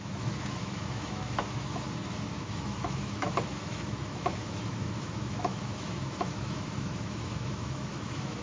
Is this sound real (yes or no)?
no